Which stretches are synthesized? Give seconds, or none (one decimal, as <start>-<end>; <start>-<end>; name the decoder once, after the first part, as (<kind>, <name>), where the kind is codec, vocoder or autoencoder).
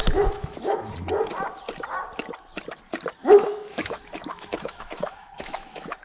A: 0.0-0.9 (autoencoder, DAC-VAE); 3.2-6.0